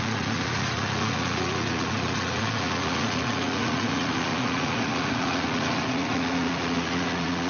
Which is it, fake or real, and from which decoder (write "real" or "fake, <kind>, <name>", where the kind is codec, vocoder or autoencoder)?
fake, vocoder, Vocos